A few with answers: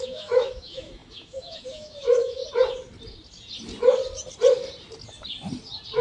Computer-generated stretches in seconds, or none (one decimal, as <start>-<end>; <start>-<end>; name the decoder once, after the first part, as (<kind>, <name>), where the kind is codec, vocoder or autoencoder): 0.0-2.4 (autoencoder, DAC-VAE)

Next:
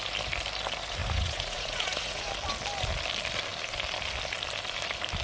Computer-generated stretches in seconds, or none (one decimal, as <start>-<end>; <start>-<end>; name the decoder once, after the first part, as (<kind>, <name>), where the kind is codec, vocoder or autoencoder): 1.0-2.3 (vocoder, Vocos)

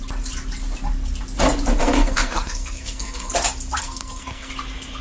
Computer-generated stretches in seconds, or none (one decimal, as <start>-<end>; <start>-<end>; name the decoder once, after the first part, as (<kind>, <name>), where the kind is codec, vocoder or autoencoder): 1.8-3.3 (codec, SNAC); 3.8-4.5

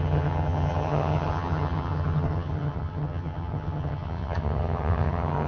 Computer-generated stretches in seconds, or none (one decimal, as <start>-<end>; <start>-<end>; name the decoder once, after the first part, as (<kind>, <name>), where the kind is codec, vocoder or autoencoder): 0.0-5.5 (vocoder, HiFi-GAN)

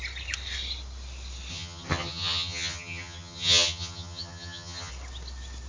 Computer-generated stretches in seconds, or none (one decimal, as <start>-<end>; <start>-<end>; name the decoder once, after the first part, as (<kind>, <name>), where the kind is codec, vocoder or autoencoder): 1.5-4.9 (vocoder, HiFi-GAN)